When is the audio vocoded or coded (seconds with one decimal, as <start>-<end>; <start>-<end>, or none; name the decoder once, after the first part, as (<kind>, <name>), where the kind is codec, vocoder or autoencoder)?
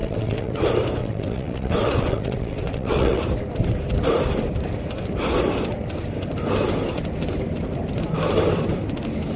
0.0-0.6 (vocoder, WaveNeXt); 1.0-3.2